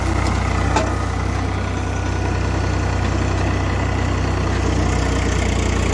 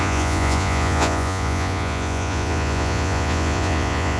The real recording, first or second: first